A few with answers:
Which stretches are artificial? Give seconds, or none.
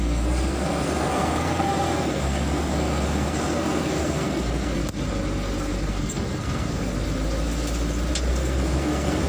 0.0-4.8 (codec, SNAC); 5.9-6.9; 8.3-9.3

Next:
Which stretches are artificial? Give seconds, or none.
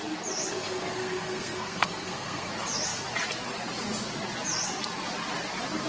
0.5-2.5 (codec, SNAC)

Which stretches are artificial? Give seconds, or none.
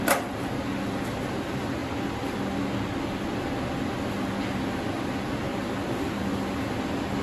none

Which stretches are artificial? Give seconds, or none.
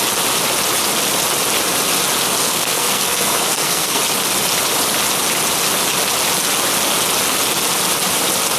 2.4-4.0 (codec, SNAC)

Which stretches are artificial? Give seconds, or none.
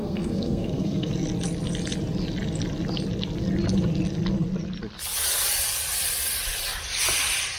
0.0-1.1 (codec, SNAC)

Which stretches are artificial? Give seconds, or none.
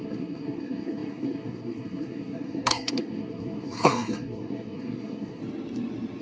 0.0-5.4 (codec, SNAC)